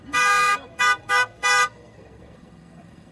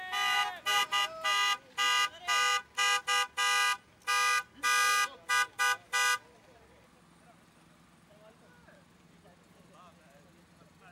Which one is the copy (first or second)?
first